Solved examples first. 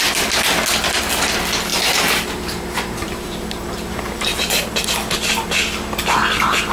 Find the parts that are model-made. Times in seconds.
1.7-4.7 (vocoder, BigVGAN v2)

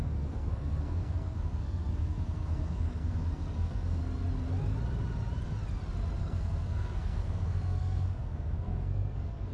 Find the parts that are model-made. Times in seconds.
0.0-4.0 (codec, SNAC); 6.2-9.5

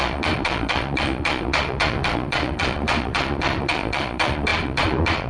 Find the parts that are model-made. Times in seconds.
0.0-5.3 (vocoder, Vocos)

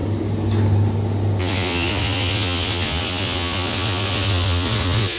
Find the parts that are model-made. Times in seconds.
1.4-5.2 (vocoder, Vocos)

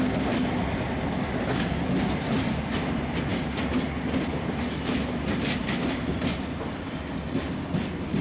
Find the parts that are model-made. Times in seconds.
none

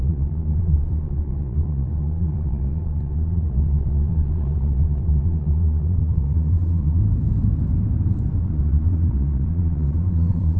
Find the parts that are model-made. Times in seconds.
0.0-7.0 (vocoder, Vocos); 8.4-10.6